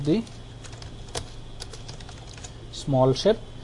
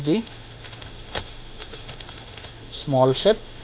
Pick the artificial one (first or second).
second